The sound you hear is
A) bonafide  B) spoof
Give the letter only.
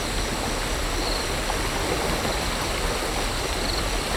A